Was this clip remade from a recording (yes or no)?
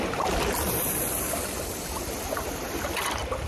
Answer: no